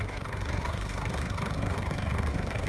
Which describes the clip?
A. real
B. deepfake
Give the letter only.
B